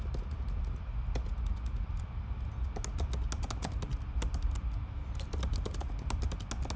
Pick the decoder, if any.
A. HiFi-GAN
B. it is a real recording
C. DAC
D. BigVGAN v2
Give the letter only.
B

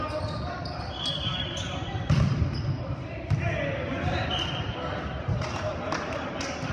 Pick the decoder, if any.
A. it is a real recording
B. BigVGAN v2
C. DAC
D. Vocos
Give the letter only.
A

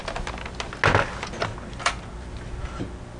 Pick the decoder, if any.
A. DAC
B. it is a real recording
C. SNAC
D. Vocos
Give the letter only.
B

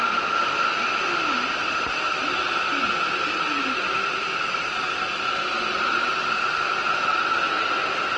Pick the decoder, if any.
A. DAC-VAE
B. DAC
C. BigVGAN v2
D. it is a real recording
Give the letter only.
D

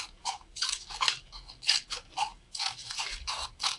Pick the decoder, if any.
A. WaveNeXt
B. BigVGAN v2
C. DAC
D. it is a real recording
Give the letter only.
C